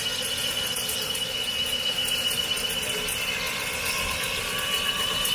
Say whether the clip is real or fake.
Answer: real